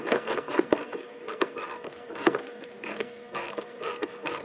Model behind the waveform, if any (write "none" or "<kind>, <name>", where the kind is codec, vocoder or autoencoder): codec, SNAC